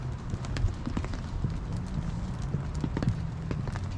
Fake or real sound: real